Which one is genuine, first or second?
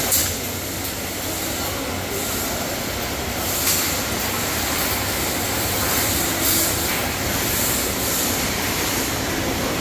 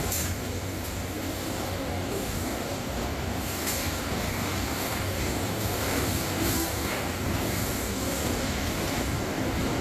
first